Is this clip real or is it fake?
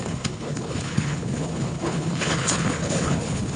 fake